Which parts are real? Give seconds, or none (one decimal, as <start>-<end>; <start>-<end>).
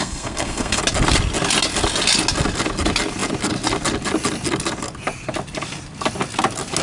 0.8-6.8